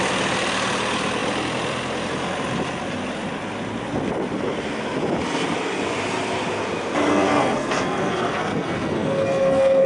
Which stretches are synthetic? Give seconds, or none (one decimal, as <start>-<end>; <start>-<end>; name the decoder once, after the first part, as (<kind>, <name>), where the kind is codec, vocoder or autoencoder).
7.1-9.9 (codec, SNAC)